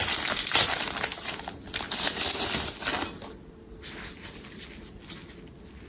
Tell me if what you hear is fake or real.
real